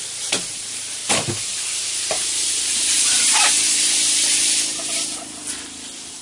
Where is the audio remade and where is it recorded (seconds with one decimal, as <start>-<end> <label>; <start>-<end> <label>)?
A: 0.0-1.0 remade; 1.0-4.7 recorded; 4.7-5.4 remade; 5.4-6.2 recorded